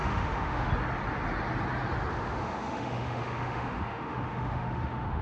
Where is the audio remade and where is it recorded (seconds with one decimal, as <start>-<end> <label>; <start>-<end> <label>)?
0.0-0.7 remade; 0.7-2.1 recorded; 2.1-5.2 remade